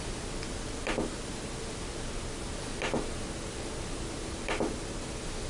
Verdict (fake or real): real